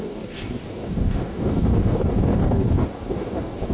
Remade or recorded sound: remade